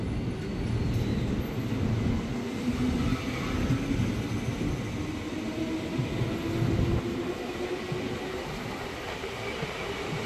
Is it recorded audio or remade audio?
recorded